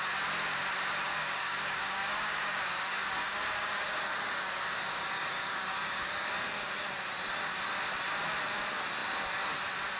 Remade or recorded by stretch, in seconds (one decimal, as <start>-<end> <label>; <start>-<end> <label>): 0.0-1.1 recorded; 1.1-6.3 remade; 6.3-10.0 recorded